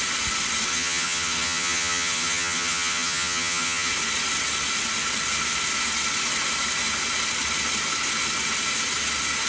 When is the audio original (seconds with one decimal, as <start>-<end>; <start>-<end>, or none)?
0.0-0.7; 3.9-9.5